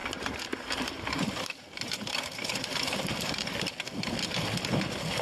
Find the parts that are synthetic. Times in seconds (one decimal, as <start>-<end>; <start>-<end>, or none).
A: 0.0-3.1